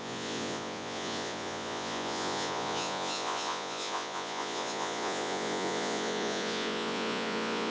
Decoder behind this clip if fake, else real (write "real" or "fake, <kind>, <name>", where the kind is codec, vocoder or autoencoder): fake, vocoder, Vocos